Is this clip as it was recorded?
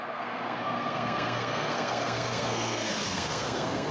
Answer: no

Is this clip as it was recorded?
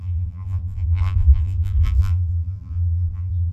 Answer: no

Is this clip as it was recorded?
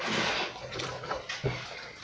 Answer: yes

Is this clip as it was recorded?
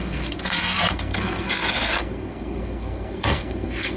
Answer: no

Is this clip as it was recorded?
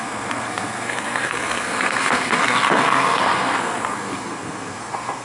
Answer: no